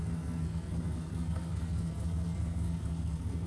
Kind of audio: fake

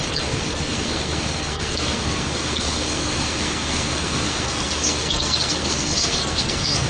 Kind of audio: fake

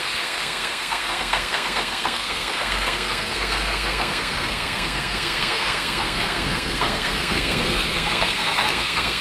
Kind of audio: fake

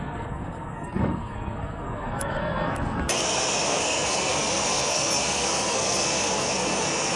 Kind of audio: fake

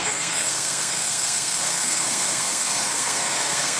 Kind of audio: fake